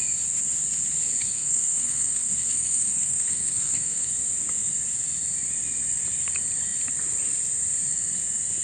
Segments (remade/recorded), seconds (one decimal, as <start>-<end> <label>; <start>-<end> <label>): 0.0-1.2 recorded; 1.2-4.1 remade; 4.1-8.6 recorded